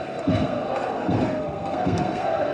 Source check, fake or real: fake